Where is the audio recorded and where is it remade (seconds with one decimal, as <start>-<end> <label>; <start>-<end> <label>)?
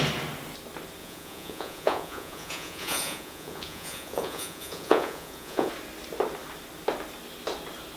0.0-1.0 recorded; 1.0-5.7 remade; 5.7-8.0 recorded